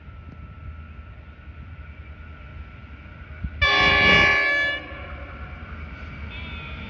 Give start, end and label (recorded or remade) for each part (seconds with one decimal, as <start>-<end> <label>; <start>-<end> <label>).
0.0-6.9 recorded